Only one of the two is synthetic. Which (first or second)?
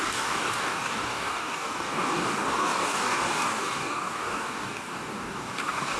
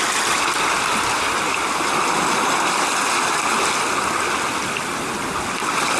first